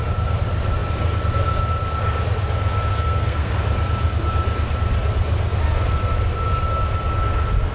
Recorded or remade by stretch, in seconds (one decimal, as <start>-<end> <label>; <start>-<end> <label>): 0.0-2.9 recorded; 2.9-3.5 remade; 3.5-7.7 recorded